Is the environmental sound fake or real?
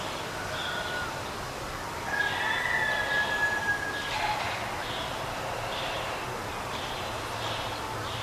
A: real